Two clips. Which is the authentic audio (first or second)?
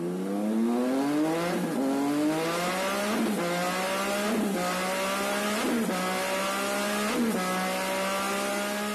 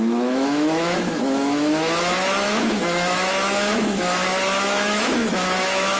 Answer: first